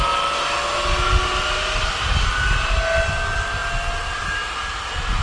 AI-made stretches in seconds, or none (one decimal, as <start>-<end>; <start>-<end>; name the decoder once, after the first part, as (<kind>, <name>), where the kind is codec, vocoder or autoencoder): none